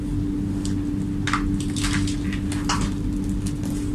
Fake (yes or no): no